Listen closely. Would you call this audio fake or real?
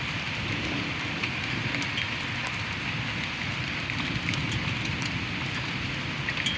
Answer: real